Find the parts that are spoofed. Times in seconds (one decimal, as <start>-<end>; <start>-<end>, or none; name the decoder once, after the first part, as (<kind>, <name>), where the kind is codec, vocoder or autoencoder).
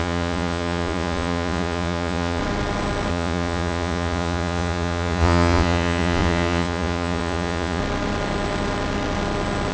0.0-2.4 (vocoder, Vocos); 3.1-7.8